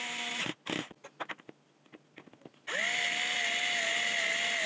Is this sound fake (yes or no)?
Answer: no